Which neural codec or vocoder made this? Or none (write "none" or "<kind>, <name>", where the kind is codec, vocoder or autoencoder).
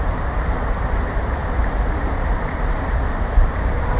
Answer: vocoder, BigVGAN v2